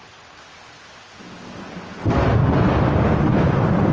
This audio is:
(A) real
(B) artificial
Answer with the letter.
A